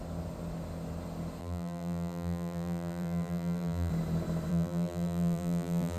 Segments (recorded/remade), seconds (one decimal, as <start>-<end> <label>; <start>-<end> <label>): 0.0-1.4 recorded; 1.4-3.9 remade; 3.9-4.5 recorded; 4.5-6.0 remade